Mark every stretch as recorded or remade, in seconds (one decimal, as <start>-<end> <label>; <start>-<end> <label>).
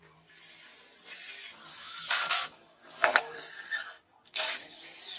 0.0-1.7 recorded; 1.7-4.8 remade; 4.8-5.2 recorded